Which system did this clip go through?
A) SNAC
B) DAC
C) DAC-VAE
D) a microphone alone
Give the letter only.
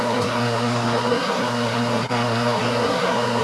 A